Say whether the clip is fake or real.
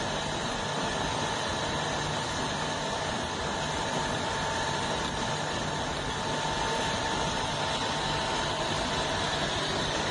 real